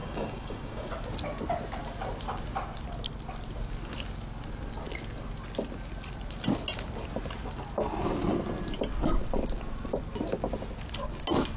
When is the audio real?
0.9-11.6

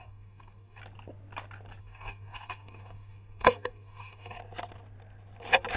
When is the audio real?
0.8-1.8; 4.4-5.8